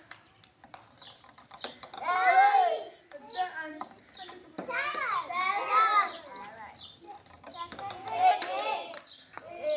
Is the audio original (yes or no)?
yes